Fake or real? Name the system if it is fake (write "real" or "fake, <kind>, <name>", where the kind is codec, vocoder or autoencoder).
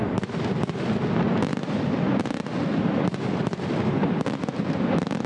real